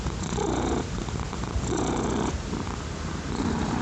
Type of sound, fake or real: real